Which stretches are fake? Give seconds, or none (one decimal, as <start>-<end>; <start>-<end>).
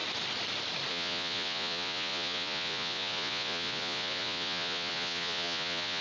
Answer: 0.9-6.0